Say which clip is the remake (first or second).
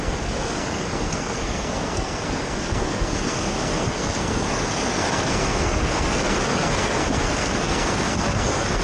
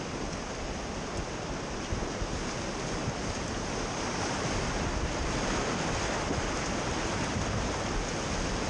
first